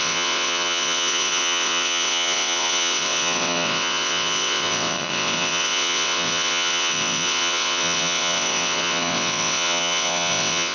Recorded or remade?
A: remade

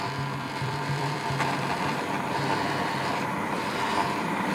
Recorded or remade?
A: remade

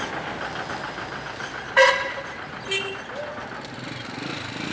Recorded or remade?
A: recorded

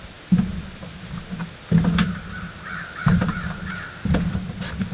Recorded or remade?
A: recorded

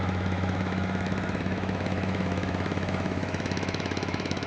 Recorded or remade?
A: remade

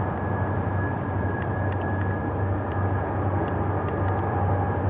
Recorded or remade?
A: recorded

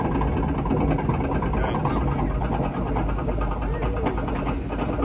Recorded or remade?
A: recorded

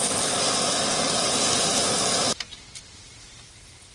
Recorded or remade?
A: recorded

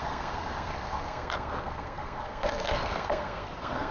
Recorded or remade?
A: remade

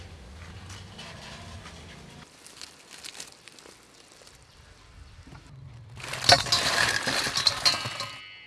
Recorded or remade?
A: recorded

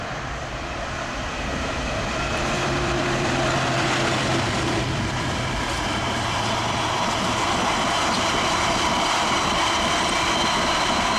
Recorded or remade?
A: remade